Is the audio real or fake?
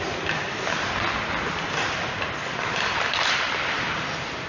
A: real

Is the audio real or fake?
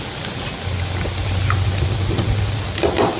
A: real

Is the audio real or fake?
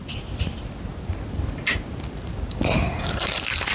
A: real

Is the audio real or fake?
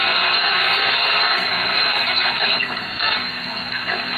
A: fake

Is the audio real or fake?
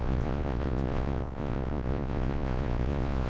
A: fake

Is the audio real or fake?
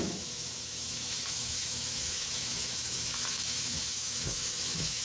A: fake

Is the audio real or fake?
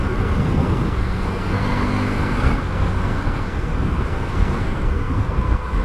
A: fake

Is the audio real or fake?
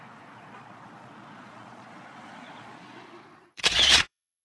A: fake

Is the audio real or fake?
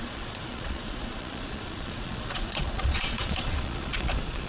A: fake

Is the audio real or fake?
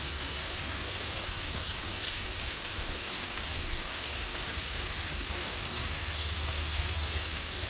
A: fake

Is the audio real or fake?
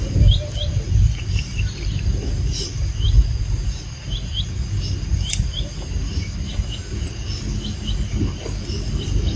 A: real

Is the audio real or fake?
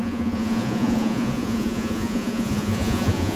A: fake